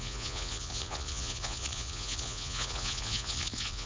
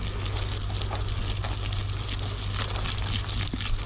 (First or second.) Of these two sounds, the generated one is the first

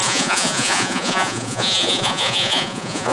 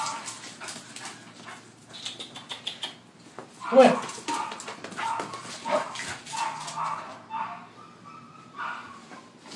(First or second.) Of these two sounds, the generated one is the first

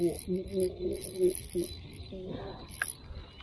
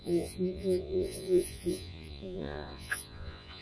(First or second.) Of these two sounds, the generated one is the second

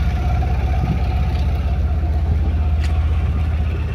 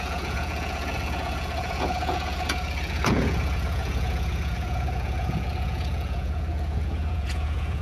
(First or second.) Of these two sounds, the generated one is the second